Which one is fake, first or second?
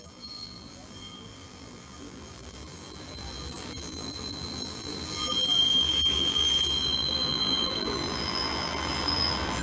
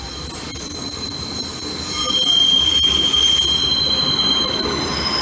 first